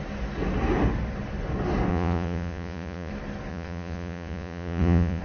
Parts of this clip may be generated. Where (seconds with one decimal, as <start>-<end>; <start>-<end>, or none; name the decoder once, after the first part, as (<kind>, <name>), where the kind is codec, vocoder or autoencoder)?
1.9-3.1 (vocoder, Vocos); 3.5-5.2